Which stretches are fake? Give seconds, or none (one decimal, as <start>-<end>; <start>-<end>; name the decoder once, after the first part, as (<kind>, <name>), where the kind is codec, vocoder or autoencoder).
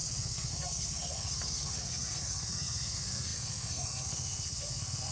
0.0-5.1 (codec, SNAC)